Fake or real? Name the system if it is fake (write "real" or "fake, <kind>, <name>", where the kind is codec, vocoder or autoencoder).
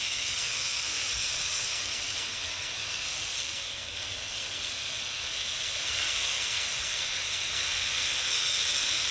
fake, codec, SNAC